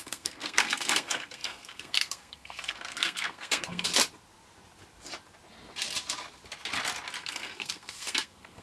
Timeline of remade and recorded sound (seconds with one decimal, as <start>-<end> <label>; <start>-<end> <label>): 0.0-3.9 remade; 3.9-7.2 recorded; 7.2-8.6 remade